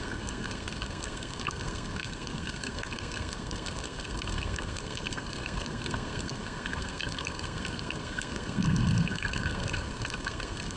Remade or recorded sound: remade